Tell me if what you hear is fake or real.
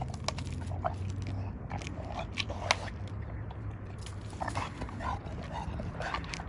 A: real